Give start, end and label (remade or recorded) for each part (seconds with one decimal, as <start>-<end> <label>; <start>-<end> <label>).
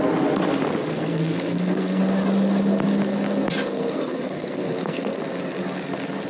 0.0-0.9 recorded; 0.9-2.0 remade; 2.0-3.7 recorded; 3.7-5.2 remade; 5.2-6.3 recorded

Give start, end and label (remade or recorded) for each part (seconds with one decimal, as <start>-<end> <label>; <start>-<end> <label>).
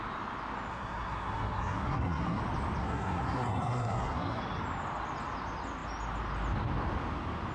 0.0-0.7 recorded; 0.7-2.4 remade; 2.4-2.8 recorded; 2.8-4.4 remade; 4.4-7.5 recorded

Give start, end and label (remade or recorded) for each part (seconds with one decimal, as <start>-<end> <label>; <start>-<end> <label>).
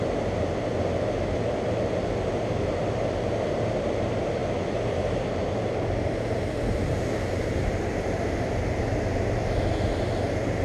0.0-10.6 recorded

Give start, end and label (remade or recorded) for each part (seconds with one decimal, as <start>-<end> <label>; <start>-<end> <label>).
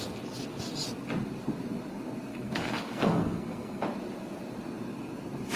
0.0-2.3 recorded; 2.3-3.8 remade; 3.8-5.6 recorded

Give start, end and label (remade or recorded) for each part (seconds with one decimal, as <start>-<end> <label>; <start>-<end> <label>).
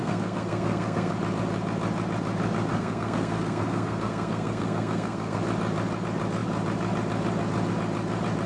0.0-1.1 remade; 1.1-2.7 recorded; 2.7-5.4 remade; 5.4-8.5 recorded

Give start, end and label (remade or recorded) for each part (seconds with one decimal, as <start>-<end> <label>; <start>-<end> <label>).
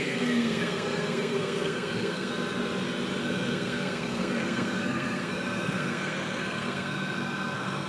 0.0-2.3 remade; 2.3-3.2 recorded; 3.2-7.9 remade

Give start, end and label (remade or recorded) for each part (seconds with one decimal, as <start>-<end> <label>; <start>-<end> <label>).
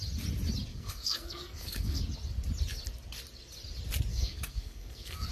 0.0-0.7 recorded; 0.7-2.0 remade; 2.0-4.1 recorded; 4.1-5.3 remade